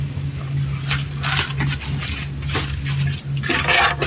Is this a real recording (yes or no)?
yes